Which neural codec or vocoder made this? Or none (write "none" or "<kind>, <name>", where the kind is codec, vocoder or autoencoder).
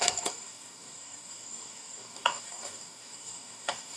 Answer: codec, DAC